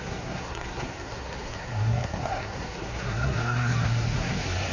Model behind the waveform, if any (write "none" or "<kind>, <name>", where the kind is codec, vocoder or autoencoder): codec, SNAC